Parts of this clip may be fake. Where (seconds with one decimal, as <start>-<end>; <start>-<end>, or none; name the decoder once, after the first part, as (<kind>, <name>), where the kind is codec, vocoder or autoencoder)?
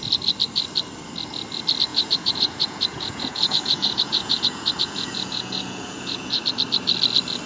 1.9-6.4 (vocoder, Vocos)